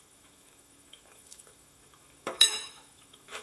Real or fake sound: fake